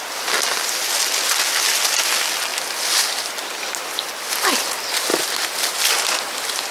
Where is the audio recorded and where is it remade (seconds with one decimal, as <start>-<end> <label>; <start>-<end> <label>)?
0.0-5.1 recorded; 5.1-5.8 remade; 5.8-6.7 recorded